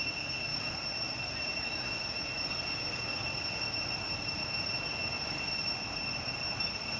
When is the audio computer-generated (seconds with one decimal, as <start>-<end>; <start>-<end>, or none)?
none